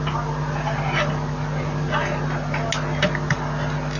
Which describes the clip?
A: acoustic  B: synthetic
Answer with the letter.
A